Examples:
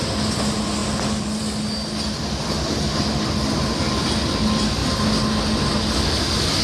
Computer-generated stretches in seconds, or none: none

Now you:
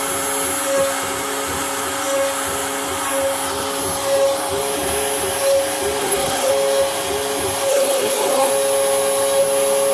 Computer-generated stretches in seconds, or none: 6.0-6.5 (codec, SNAC); 7.7-8.5

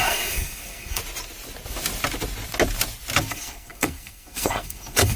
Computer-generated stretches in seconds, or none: 0.0-1.0 (codec, SNAC); 3.3-5.2

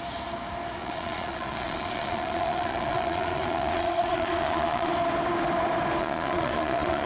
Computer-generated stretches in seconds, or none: 0.8-4.9 (vocoder, Vocos); 6.0-7.1

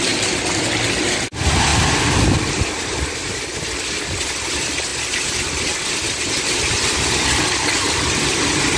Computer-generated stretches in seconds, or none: none

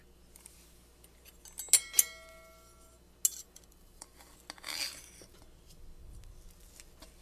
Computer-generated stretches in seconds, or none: 3.4-4.2 (vocoder, BigVGAN v2)